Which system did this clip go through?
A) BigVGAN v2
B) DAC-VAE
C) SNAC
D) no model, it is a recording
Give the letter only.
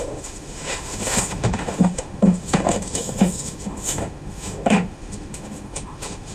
B